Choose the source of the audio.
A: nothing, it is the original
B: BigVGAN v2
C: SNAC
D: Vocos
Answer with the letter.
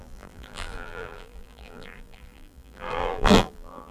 B